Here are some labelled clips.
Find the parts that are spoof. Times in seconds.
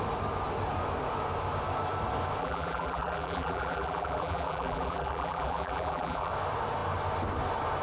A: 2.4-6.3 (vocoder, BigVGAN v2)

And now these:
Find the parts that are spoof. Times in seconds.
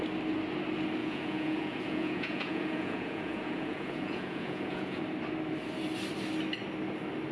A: 1.0-5.0 (vocoder, Vocos)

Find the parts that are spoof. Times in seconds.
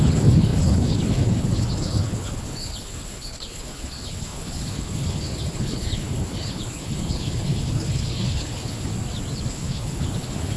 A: 0.0-8.9 (codec, HILCodec); 9.5-10.6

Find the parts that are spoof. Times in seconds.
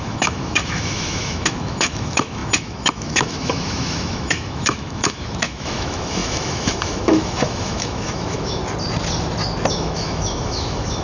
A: 0.0-8.6 (autoencoder, DAC-VAE); 9.7-11.0